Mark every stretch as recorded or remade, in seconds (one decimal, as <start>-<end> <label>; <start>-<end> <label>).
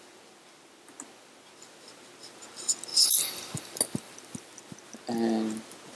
0.0-6.0 recorded